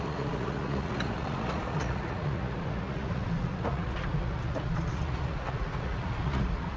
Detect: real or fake fake